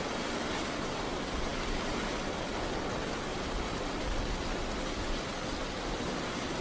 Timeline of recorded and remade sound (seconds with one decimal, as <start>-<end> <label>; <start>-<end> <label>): 0.0-6.6 recorded